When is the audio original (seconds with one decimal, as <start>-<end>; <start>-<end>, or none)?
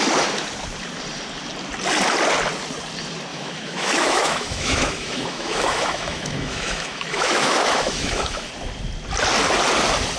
0.0-3.3; 8.5-10.2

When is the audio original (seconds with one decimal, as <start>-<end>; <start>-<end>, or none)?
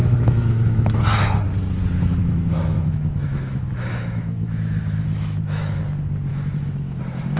1.0-2.2; 5.8-6.3; 7.0-7.4